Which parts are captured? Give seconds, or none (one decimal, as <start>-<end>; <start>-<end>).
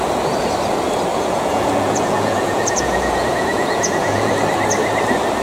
0.0-1.1; 4.3-5.4